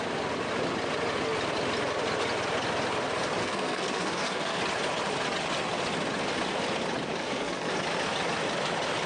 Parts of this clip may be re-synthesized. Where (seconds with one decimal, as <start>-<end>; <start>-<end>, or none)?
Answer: 3.4-4.6; 7.2-7.7